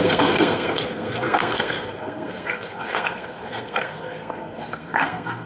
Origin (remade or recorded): remade